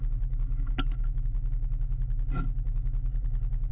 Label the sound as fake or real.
real